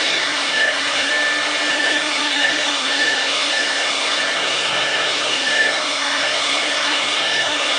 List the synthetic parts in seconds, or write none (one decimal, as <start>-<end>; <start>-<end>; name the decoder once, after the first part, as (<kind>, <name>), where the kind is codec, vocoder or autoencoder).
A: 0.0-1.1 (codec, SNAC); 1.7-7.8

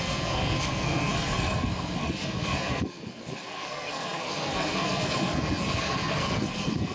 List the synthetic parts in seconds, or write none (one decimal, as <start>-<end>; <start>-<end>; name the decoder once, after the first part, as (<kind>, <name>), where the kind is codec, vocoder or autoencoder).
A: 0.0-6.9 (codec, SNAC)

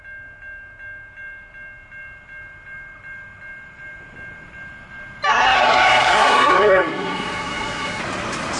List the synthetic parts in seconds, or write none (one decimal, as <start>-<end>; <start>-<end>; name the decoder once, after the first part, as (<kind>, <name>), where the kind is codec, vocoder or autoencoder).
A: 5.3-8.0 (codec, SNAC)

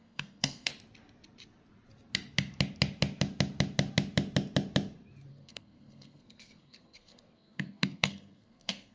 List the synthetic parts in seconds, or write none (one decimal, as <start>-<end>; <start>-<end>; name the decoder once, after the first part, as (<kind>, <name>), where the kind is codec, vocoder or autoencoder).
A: 0.0-0.7 (codec, SNAC); 5.3-8.9